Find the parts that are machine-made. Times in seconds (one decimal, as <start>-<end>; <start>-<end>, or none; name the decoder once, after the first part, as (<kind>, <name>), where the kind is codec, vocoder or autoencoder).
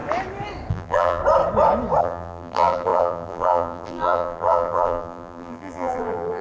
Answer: 0.7-1.2 (vocoder, BigVGAN v2); 2.0-6.4